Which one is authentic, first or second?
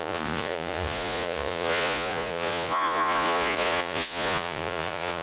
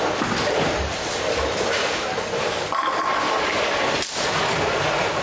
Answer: second